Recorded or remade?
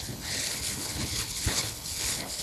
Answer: remade